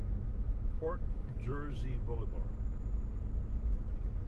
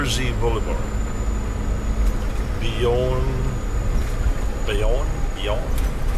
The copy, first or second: first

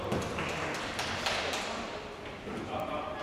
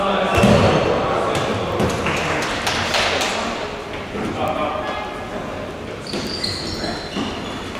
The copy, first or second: first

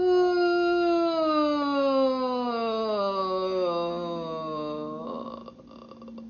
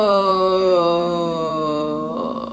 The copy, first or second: second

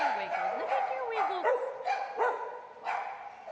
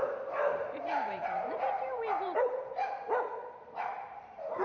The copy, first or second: second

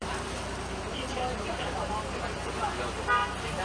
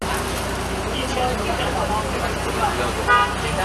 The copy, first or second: first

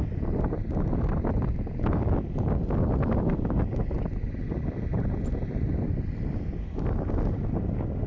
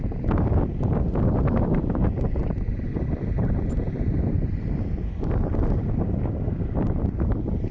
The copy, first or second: second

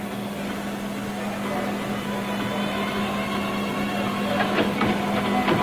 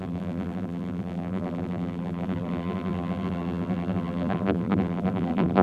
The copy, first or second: second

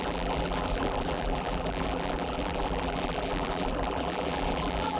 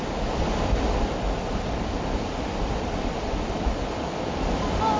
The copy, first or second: first